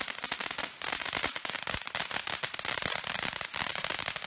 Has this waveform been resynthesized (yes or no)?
no